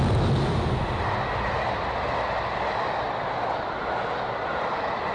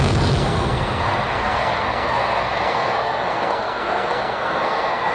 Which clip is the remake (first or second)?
second